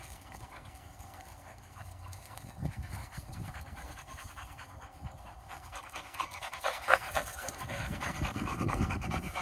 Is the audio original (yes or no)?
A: no